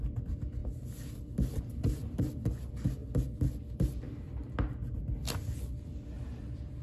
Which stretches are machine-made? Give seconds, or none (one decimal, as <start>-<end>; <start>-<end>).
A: none